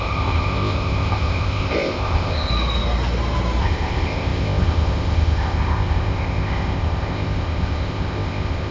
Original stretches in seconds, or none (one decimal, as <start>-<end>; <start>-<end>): 2.5-3.6